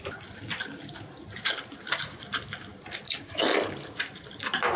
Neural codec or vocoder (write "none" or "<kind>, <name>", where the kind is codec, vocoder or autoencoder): vocoder, BigVGAN v2